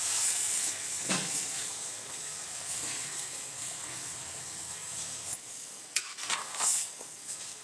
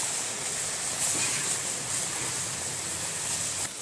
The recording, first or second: second